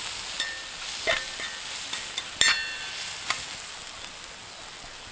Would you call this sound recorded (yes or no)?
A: yes